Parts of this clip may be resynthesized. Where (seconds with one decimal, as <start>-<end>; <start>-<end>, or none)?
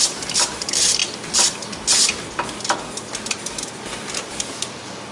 0.0-1.0; 4.1-5.1